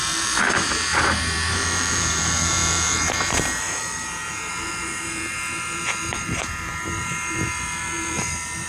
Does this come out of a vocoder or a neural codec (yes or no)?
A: yes